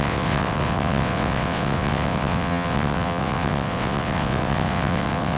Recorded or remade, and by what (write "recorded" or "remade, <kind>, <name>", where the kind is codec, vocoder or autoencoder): remade, vocoder, WaveNeXt